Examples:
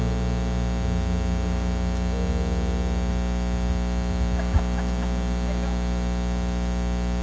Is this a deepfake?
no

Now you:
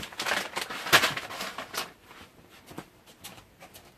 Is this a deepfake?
no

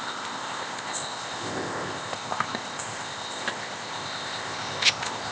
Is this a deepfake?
yes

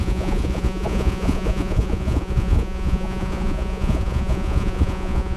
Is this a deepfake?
yes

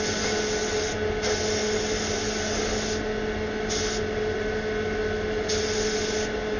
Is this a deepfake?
no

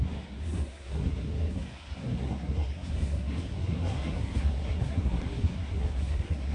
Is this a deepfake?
yes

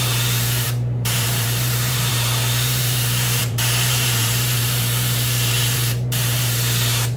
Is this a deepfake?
yes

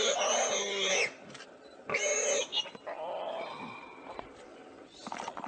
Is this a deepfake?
no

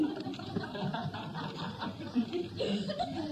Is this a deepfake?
yes